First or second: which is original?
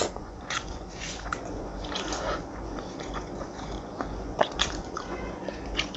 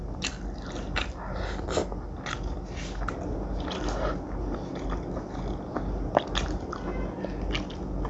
second